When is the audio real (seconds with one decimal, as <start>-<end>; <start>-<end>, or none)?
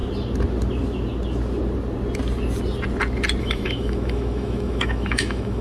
0.0-3.4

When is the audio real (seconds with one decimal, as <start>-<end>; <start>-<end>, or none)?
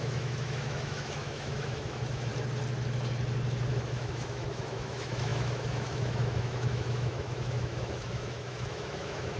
2.3-3.7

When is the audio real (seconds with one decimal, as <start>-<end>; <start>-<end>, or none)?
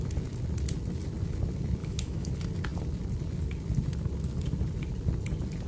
0.0-1.8; 2.3-5.7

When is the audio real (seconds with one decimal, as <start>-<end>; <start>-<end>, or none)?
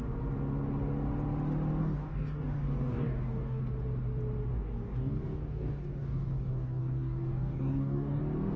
0.0-1.8; 3.6-4.5; 8.2-8.6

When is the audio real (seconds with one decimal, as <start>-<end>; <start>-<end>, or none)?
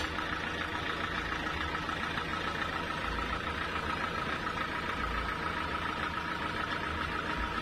0.0-2.3; 6.7-7.6